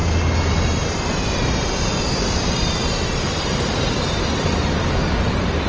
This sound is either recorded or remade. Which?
remade